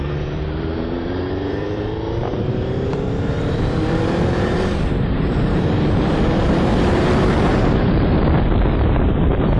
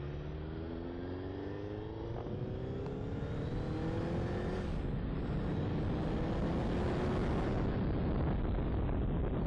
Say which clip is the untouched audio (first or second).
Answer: second